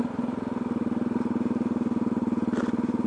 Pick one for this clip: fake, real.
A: real